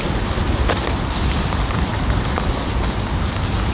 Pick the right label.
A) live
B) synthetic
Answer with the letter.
A